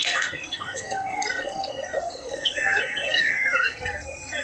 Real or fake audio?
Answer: fake